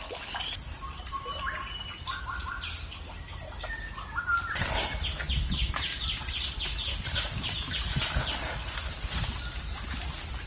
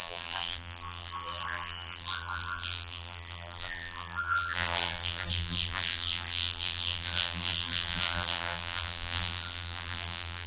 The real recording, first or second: first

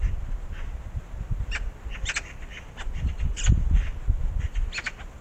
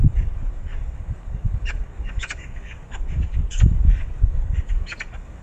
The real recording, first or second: first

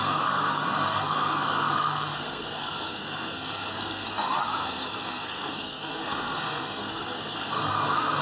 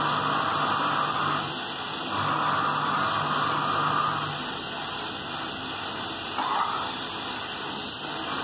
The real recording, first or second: second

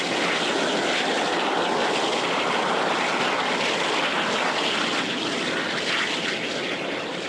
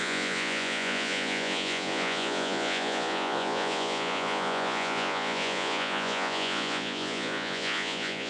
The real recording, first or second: first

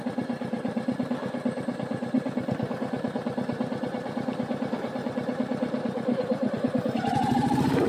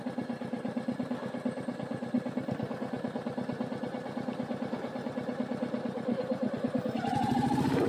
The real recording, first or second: second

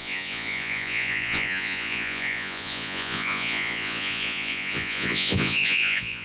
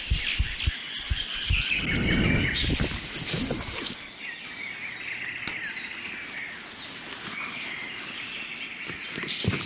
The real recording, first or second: second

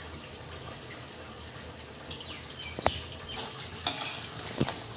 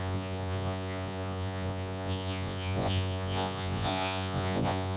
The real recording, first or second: first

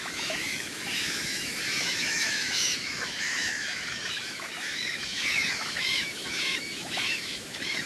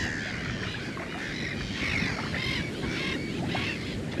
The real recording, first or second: second